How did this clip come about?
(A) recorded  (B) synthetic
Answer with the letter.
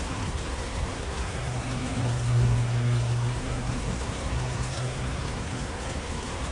B